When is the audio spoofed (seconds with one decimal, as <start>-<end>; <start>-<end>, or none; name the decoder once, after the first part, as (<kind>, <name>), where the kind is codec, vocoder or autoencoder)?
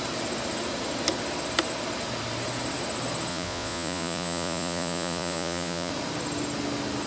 3.3-5.9 (vocoder, Vocos)